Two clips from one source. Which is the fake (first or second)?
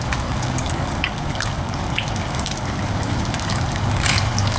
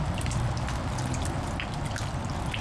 first